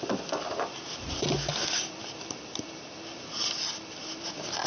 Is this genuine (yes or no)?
yes